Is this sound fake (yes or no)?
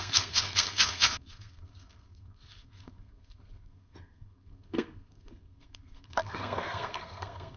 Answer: yes